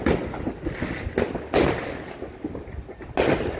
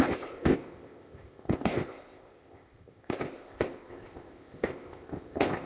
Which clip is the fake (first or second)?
second